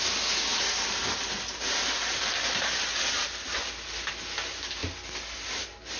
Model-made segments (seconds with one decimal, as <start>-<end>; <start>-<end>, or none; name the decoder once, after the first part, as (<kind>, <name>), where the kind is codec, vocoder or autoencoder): none